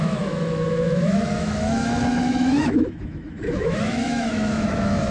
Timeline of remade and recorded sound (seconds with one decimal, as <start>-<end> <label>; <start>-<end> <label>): 0.0-5.1 remade